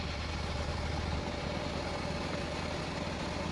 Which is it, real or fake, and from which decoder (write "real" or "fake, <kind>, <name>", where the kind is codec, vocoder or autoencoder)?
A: real